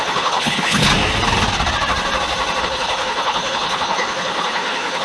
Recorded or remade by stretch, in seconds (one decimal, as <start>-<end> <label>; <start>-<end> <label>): 0.0-0.9 remade; 0.9-2.6 recorded; 2.6-5.0 remade